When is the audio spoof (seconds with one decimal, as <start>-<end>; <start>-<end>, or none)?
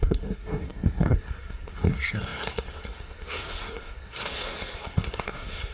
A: 0.0-5.7